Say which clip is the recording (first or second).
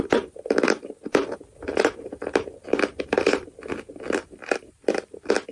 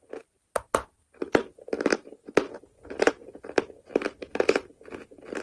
second